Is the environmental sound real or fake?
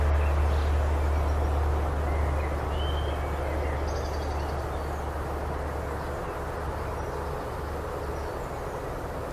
real